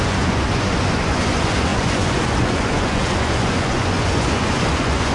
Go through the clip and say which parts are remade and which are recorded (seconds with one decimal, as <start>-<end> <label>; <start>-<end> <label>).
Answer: 0.0-5.1 remade

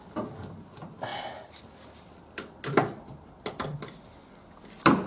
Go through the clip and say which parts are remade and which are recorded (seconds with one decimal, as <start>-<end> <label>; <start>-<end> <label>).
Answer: 0.0-5.1 recorded

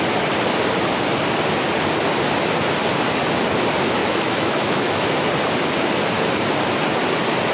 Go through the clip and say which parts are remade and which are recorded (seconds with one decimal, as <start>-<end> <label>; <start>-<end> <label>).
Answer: 0.0-4.0 recorded; 4.0-5.3 remade; 5.3-7.5 recorded

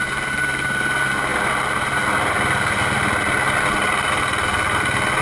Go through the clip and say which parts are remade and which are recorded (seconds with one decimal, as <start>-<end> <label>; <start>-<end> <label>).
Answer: 0.0-5.2 recorded